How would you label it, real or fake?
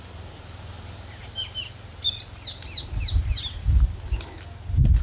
real